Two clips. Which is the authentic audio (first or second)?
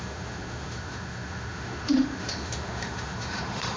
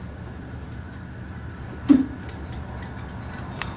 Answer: second